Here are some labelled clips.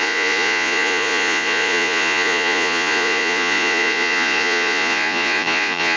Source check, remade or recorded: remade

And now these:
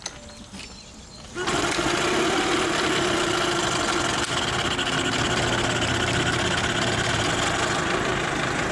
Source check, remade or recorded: recorded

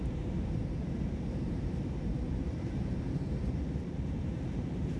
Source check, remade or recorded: remade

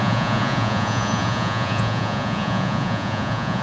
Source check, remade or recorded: remade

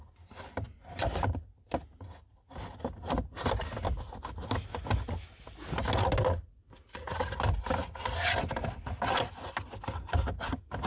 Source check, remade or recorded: recorded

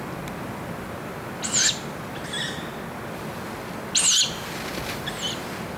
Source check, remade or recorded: recorded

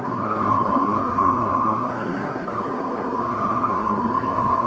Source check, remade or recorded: remade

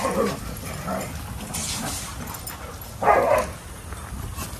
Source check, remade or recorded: recorded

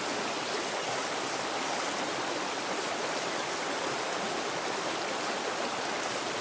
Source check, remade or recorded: recorded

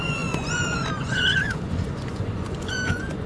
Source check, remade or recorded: remade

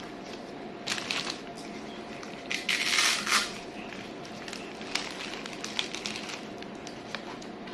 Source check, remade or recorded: recorded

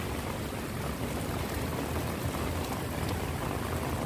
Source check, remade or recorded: recorded